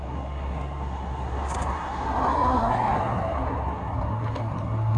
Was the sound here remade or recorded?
remade